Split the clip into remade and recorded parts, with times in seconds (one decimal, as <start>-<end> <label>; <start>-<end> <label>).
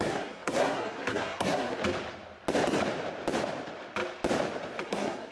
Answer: 0.0-1.8 remade; 1.8-4.8 recorded; 4.8-5.3 remade